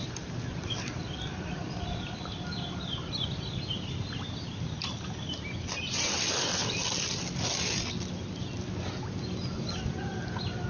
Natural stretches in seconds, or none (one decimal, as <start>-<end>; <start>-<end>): 0.0-10.7